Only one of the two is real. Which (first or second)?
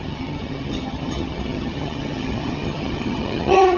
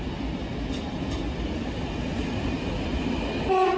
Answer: second